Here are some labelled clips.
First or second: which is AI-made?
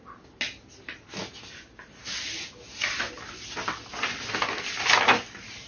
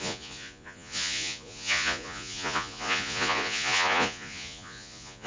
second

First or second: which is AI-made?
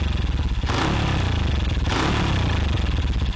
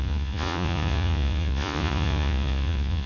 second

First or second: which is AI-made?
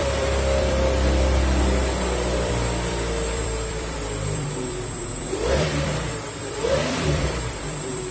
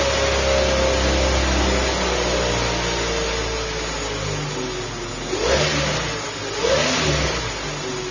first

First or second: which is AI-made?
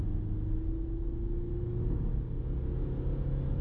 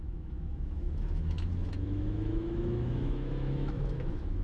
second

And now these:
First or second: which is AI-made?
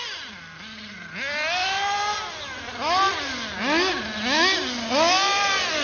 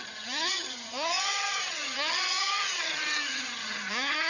second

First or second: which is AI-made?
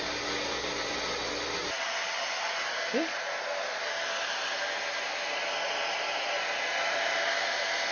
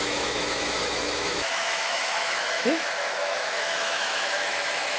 second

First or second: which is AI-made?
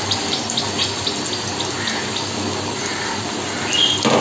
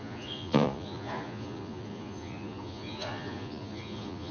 second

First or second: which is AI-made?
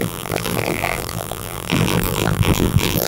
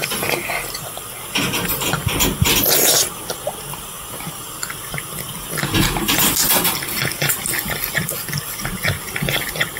first